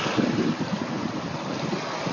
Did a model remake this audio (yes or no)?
yes